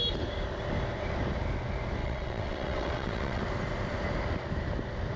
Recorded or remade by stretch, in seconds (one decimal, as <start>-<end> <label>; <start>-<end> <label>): 0.0-2.0 recorded; 2.0-3.4 remade; 3.4-5.2 recorded